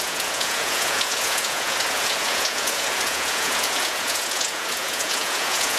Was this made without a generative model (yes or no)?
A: no